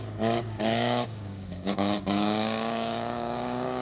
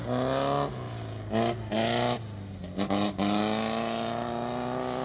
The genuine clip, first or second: second